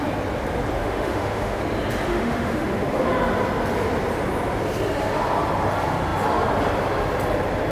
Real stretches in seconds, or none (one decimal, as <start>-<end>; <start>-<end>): 0.0-0.8; 1.6-2.1; 3.1-7.7